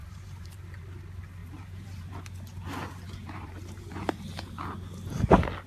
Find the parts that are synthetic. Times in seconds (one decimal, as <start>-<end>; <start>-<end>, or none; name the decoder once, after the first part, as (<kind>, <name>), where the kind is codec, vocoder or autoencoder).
0.0-0.8 (vocoder, BigVGAN v2); 1.4-2.2; 3.2-3.9